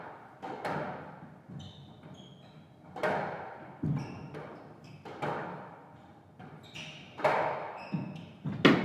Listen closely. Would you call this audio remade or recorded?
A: recorded